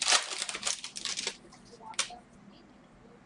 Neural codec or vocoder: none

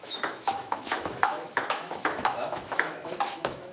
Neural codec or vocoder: autoencoder, DAC-VAE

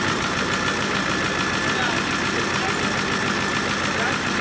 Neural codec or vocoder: none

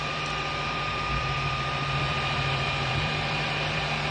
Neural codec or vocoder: vocoder, BigVGAN v2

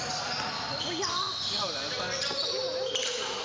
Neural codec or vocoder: none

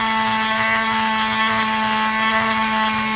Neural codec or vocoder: none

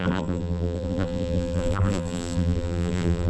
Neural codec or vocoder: vocoder, BigVGAN v2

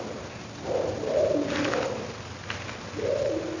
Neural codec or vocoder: none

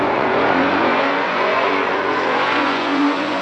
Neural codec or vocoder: vocoder, Vocos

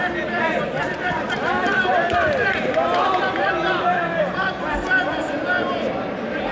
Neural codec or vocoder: vocoder, BigVGAN v2